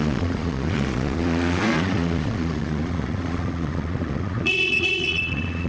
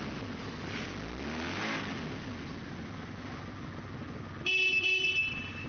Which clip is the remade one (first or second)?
first